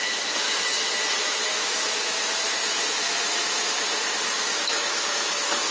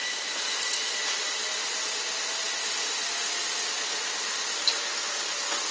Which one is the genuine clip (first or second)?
second